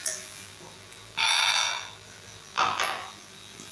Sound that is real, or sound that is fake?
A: fake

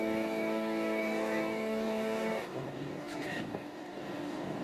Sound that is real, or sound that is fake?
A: fake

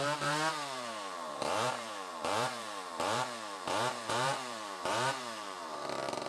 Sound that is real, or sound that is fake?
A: fake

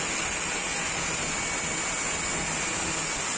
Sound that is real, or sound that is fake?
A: real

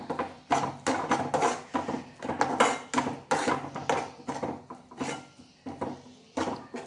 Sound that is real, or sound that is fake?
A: real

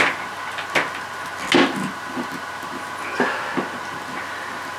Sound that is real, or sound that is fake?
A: real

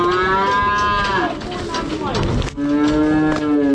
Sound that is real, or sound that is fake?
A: real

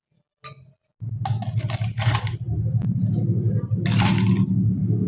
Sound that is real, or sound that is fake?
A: real